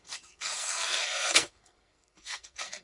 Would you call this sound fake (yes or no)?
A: yes